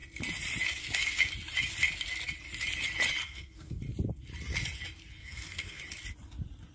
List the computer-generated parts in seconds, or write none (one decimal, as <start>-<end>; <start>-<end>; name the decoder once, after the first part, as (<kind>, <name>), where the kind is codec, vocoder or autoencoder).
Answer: 3.2-3.8 (codec, SNAC); 5.2-5.8